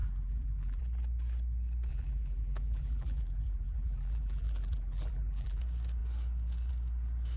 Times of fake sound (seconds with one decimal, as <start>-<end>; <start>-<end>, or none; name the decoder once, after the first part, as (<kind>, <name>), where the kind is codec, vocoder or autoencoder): 0.0-0.8 (vocoder, BigVGAN v2); 1.9-5.6

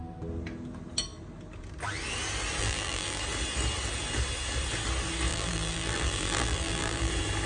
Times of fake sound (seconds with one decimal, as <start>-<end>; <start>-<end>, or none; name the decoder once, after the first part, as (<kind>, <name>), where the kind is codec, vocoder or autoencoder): 2.6-3.2 (vocoder, BigVGAN v2); 5.3-7.1